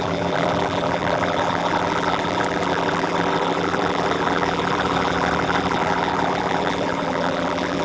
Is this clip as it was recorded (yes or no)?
no